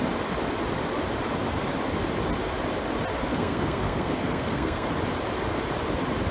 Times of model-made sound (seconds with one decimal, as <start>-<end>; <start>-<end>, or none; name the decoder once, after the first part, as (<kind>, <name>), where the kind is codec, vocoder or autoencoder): 3.2-4.9 (codec, SNAC)